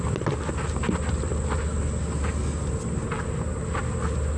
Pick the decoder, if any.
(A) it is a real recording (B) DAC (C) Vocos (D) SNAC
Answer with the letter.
A